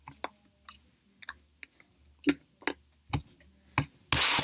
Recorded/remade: recorded